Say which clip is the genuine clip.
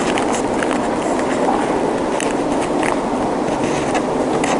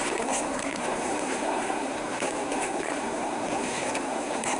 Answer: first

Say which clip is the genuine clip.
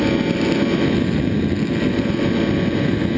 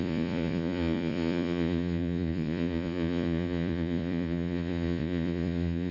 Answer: first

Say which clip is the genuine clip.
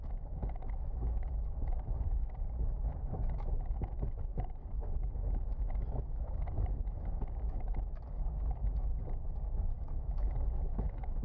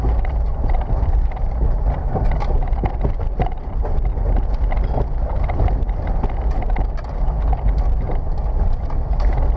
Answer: second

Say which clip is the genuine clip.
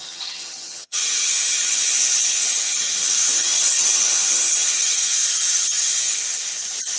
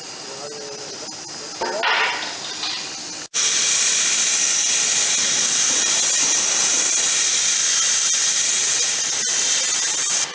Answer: second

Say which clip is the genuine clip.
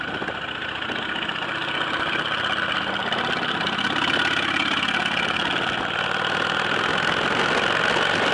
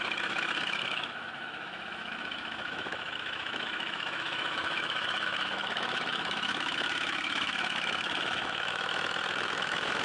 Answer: first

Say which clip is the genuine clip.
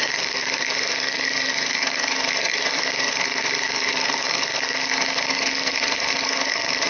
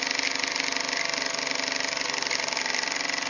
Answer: second